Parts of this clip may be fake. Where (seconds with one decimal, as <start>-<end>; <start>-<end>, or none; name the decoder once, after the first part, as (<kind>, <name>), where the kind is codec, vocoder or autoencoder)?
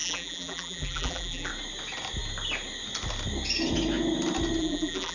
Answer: 0.0-1.5 (vocoder, BigVGAN v2); 4.6-5.1